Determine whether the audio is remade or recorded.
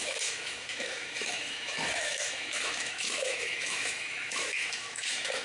remade